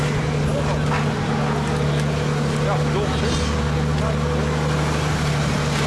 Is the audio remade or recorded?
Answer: recorded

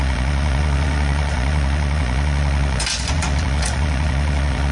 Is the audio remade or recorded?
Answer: remade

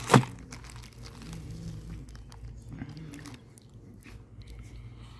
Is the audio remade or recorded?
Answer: recorded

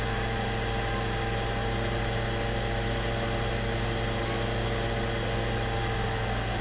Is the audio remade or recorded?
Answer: recorded